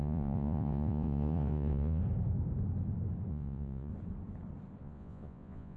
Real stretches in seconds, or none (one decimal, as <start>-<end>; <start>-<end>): 2.0-3.3; 3.9-4.8